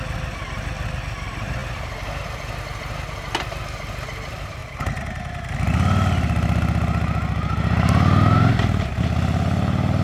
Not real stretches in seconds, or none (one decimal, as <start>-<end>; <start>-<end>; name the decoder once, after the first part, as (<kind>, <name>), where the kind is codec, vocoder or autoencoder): none